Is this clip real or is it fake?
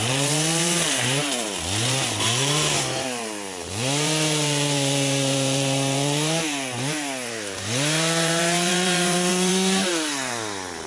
fake